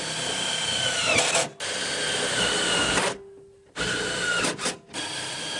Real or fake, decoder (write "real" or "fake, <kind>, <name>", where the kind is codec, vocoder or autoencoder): real